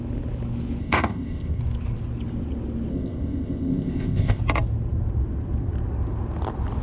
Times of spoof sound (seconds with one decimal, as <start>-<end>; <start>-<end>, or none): 0.8-1.6; 2.9-4.4